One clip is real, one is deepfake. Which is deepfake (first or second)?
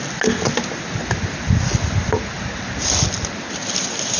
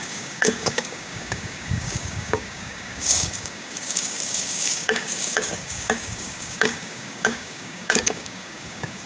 second